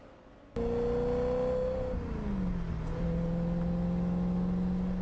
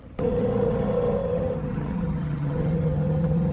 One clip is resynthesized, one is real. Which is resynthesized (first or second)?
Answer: second